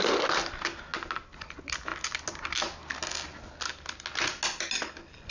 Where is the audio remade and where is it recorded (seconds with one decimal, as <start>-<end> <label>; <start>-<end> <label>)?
0.0-5.3 recorded